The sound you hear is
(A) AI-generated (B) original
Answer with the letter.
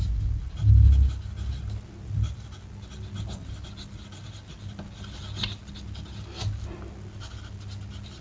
B